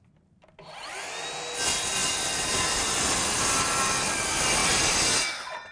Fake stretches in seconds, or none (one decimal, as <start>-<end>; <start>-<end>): 2.0-3.4